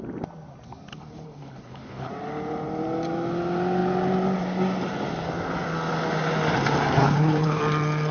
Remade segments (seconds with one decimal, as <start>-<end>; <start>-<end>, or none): 0.9-2.1; 7.0-7.6